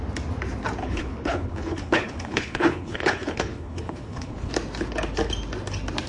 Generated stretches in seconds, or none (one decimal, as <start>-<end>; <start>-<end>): 0.8-4.5